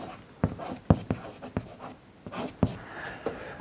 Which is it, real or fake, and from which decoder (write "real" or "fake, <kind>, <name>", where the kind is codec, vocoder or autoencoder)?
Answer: real